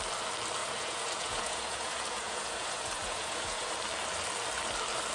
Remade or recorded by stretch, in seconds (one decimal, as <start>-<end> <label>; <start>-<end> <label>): 0.0-0.6 recorded; 0.6-3.7 remade; 3.7-5.1 recorded